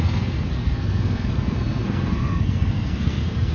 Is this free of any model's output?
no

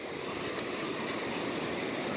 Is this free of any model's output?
yes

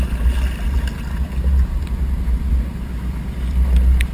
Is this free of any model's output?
yes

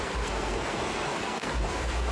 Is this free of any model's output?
no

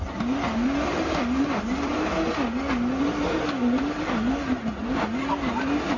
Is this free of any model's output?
yes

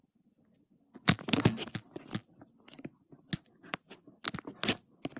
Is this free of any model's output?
yes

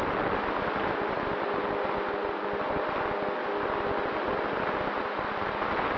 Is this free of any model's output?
yes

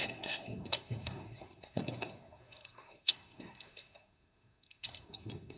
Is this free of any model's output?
no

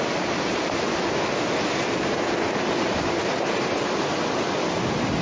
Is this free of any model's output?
yes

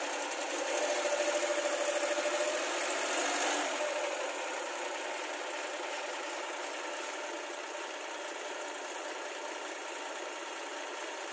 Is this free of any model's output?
yes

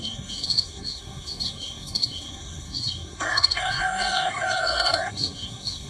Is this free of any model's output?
no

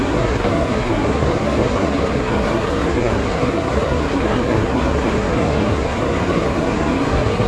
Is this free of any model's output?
no